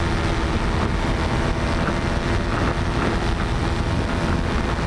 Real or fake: real